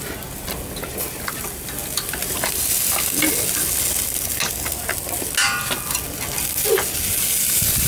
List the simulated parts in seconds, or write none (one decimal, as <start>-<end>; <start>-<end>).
none